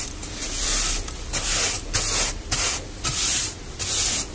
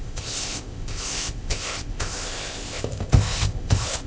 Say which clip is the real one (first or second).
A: first